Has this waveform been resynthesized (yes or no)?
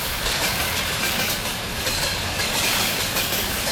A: yes